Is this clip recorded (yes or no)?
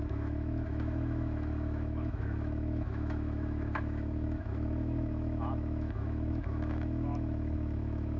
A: no